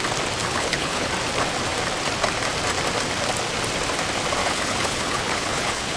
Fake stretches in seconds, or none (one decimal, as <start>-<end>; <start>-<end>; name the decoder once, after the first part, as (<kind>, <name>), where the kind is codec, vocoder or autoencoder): 0.4-1.1 (codec, HILCodec); 4.4-6.0